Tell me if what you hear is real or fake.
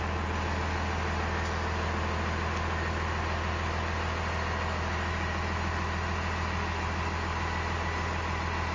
real